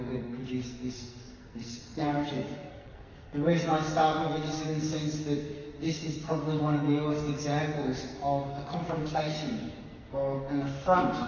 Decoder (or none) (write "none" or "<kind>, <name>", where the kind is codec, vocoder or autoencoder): codec, SNAC